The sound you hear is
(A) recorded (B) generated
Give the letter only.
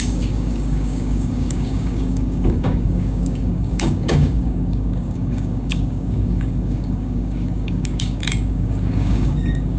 B